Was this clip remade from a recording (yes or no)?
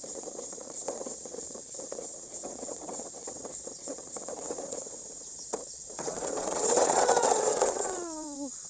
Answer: yes